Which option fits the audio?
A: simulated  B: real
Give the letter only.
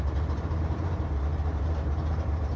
A